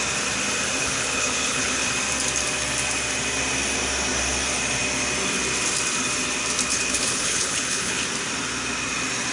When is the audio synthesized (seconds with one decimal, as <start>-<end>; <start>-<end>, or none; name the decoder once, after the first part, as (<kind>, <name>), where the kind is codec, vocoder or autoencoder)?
0.8-1.9 (codec, HILCodec); 6.7-8.0